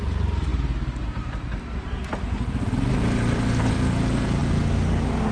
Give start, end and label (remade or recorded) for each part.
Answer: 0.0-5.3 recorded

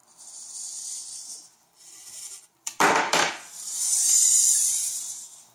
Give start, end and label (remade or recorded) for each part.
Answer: 0.0-3.3 remade; 3.3-4.2 recorded; 4.2-4.8 remade; 4.8-5.5 recorded

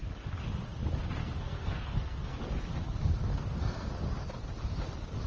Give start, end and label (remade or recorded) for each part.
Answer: 0.0-1.2 recorded; 1.2-2.4 remade; 2.4-3.3 recorded; 3.3-3.9 remade; 3.9-5.3 recorded

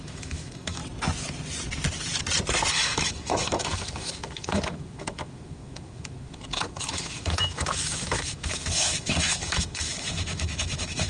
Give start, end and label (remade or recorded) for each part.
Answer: 0.0-0.8 remade; 0.8-2.7 recorded; 2.7-11.1 remade